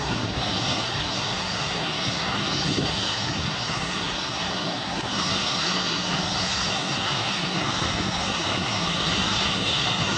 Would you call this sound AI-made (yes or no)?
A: yes